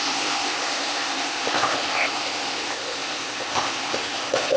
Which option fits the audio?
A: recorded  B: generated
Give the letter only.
B